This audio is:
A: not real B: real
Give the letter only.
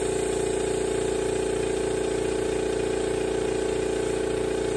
B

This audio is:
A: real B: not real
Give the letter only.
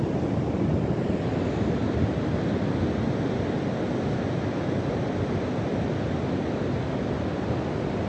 A